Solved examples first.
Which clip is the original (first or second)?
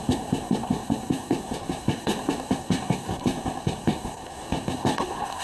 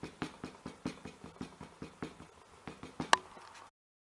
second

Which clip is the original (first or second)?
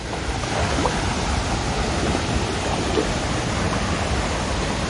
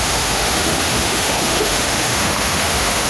first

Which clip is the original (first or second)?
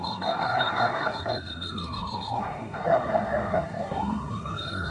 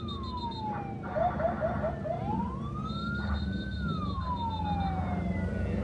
second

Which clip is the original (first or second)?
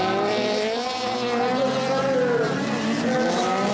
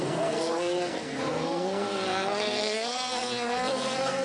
first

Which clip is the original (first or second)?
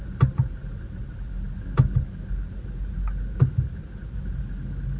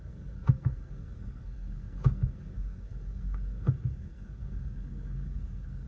first